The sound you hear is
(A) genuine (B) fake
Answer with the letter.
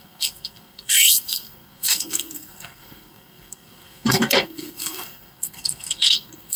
B